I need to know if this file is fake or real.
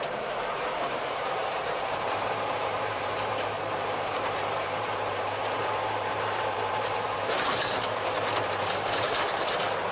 fake